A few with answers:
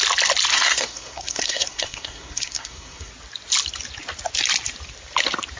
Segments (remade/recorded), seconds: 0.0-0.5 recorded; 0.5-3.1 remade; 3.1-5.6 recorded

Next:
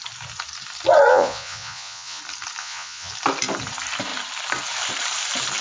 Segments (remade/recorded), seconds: 0.0-1.1 recorded; 1.1-2.2 remade; 2.2-2.6 recorded; 2.6-3.1 remade; 3.1-5.6 recorded

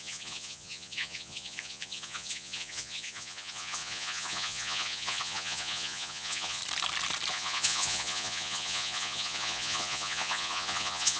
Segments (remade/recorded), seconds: 0.0-6.6 remade; 6.6-7.3 recorded; 7.3-11.2 remade

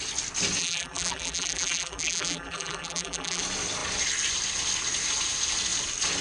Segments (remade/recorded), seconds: 0.0-0.6 recorded; 0.6-3.4 remade; 3.4-6.2 recorded

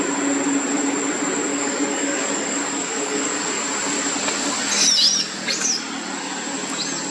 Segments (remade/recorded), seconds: 0.0-1.5 recorded; 1.5-3.5 remade; 3.5-7.1 recorded